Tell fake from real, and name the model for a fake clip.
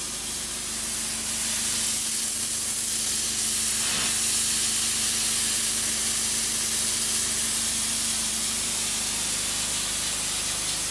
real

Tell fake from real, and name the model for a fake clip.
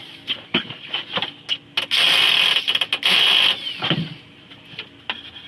real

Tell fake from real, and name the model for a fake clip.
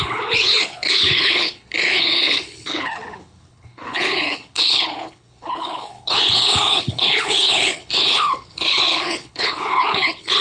fake, codec, HILCodec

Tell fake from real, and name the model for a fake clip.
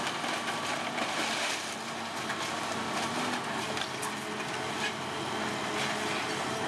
real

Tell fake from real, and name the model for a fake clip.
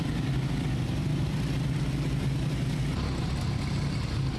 real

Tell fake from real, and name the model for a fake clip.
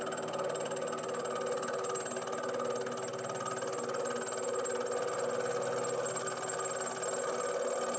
real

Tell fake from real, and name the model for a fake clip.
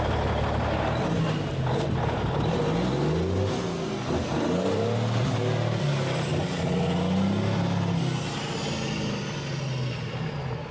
real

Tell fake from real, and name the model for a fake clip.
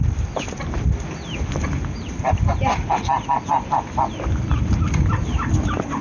real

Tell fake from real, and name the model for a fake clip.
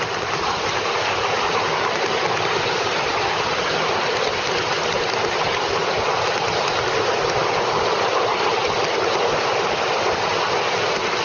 real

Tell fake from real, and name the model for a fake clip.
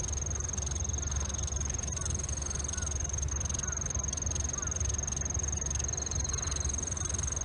real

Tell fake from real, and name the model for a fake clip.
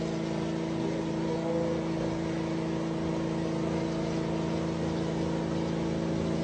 real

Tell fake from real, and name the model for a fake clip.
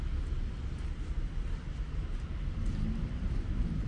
real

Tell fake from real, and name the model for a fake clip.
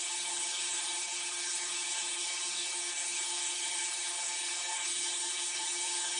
fake, codec, HILCodec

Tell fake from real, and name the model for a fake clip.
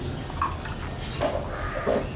real